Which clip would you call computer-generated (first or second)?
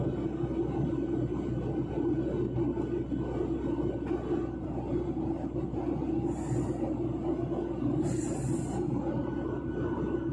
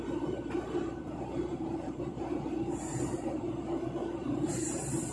second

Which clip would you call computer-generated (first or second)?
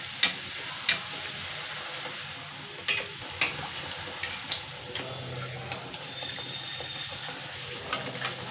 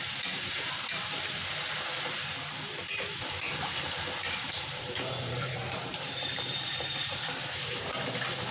second